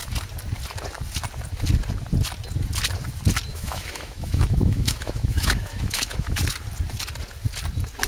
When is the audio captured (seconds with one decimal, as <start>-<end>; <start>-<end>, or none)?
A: 0.0-3.5; 6.4-8.1